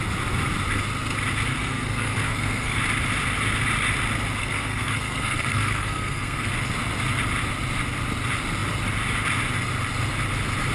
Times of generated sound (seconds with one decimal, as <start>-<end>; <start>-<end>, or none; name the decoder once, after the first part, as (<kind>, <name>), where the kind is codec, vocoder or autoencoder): 1.5-2.8 (codec, SNAC); 4.4-6.5